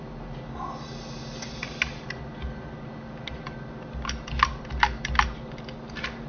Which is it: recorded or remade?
recorded